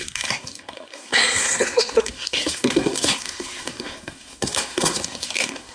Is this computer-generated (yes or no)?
yes